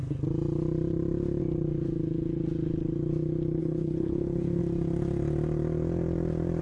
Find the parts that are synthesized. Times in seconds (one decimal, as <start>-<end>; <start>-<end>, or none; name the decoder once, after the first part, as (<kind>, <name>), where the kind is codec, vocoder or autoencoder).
3.6-4.6 (codec, HILCodec)